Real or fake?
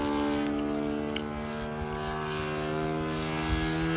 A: real